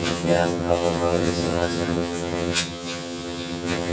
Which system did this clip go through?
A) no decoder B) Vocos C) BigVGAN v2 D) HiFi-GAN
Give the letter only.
D